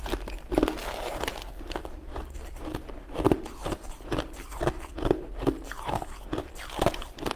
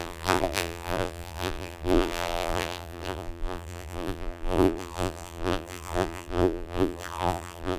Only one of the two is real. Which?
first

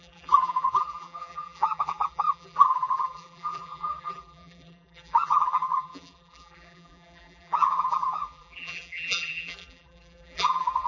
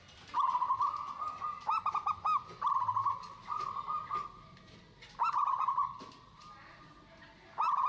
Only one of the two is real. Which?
second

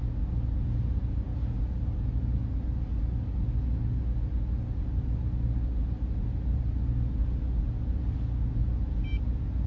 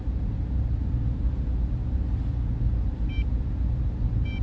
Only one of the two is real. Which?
first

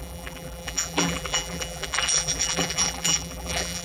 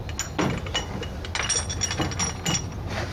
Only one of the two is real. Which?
second